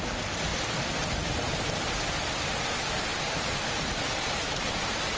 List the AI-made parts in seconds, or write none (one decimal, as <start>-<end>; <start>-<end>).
3.1-4.6